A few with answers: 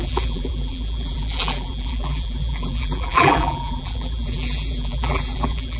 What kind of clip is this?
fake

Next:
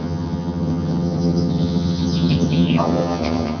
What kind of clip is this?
fake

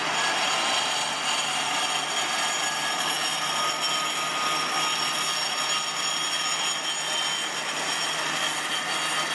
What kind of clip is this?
real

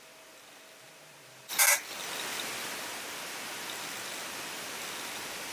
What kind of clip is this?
real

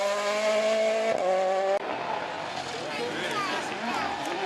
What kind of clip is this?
real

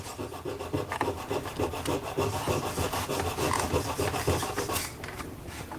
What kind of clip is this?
real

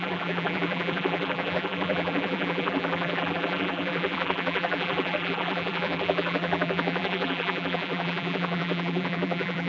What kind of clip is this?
fake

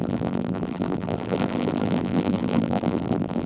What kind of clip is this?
fake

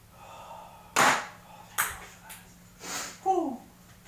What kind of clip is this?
real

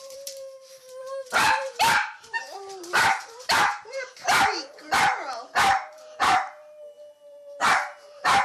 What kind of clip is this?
fake